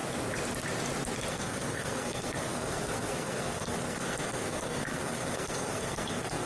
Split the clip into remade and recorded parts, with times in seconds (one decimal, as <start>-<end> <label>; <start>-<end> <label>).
0.0-1.3 recorded; 1.3-6.5 remade